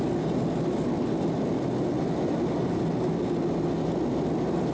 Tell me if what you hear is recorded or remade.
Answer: recorded